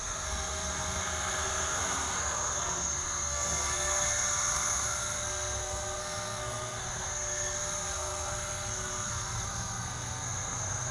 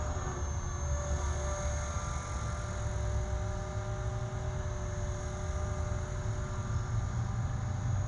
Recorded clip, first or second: second